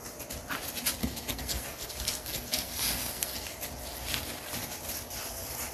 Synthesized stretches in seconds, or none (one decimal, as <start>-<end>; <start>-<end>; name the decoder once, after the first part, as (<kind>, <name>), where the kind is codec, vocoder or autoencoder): 1.0-3.6 (codec, SNAC)